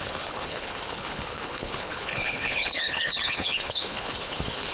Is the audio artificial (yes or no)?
yes